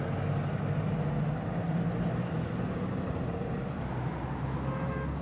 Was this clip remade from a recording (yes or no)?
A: no